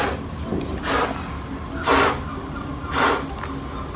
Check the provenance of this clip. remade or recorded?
recorded